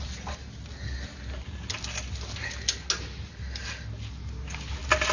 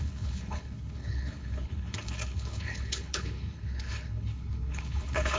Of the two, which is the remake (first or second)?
second